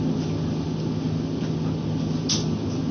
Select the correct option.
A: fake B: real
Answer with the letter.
B